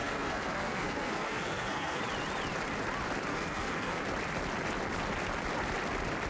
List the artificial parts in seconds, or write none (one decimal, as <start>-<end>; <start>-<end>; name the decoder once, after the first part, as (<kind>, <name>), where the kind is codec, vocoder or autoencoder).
0.0-2.0 (codec, SNAC); 3.3-4.0